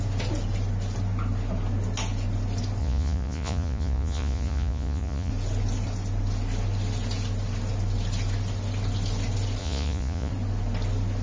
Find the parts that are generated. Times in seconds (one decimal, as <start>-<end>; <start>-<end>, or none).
2.8-5.3; 9.6-10.3